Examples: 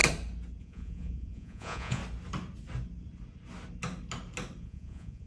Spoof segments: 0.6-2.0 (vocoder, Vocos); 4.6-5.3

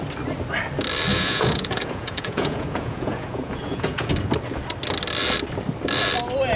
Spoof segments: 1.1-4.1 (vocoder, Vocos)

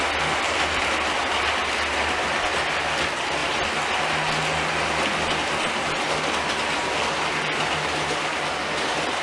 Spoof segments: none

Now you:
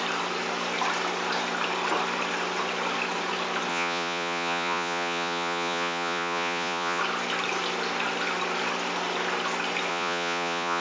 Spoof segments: 3.7-7.0 (vocoder, Vocos); 9.9-10.8

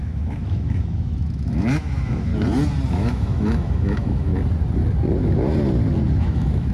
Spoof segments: 0.0-2.3 (autoencoder, DAC-VAE); 2.9-4.3; 6.2-6.7